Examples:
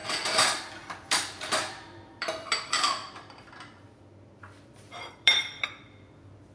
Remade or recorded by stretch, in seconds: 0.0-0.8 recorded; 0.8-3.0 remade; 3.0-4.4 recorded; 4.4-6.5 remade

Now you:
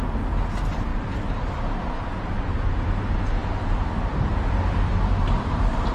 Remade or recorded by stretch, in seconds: 0.0-5.9 remade

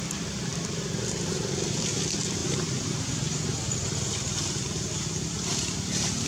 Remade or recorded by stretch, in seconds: 0.0-6.3 recorded

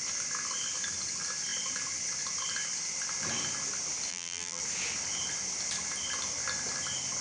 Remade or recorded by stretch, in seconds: 0.0-4.1 recorded; 4.1-4.6 remade; 4.6-7.2 recorded

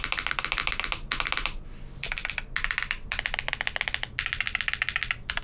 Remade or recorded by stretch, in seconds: 0.0-5.4 recorded

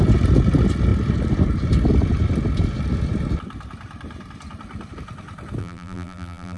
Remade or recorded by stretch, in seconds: 0.0-5.6 recorded; 5.6-6.6 remade

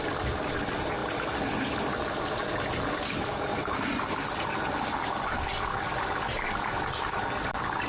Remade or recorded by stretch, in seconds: 0.0-3.5 recorded; 3.5-4.6 remade; 4.6-7.9 recorded